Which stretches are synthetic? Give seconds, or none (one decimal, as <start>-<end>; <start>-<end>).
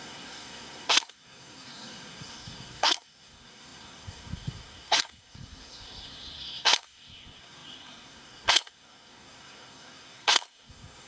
0.0-11.1